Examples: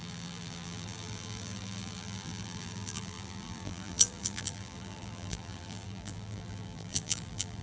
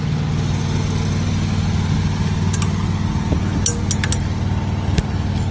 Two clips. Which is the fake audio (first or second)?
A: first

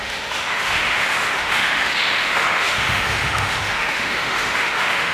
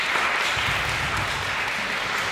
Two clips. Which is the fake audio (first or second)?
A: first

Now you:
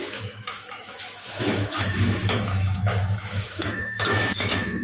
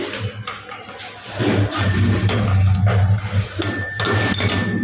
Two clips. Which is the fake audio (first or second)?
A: first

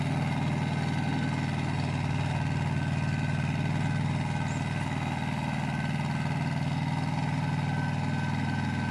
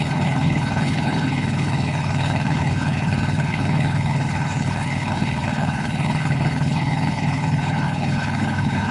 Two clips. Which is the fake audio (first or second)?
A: second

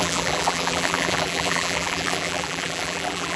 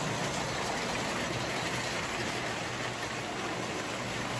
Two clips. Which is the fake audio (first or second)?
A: first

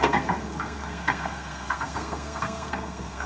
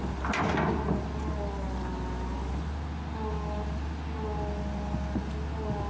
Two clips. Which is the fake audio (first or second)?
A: first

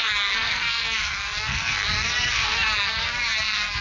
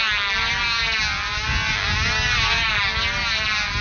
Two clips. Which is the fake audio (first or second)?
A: first